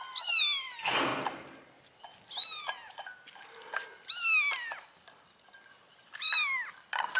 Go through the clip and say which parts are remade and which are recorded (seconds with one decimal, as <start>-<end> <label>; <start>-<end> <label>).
0.0-7.2 recorded